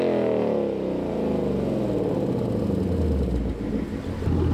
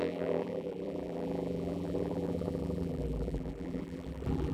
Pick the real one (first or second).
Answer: first